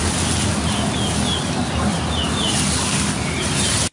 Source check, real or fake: real